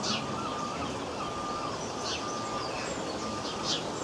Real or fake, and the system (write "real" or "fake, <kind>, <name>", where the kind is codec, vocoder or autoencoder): real